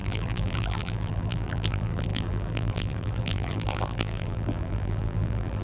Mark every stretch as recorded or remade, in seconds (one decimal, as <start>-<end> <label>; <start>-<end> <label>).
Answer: 0.0-5.6 remade